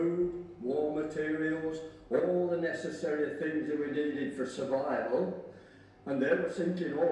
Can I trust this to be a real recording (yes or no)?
yes